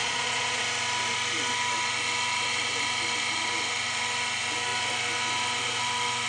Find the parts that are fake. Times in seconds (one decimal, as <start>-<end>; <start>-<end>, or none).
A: 0.0-0.6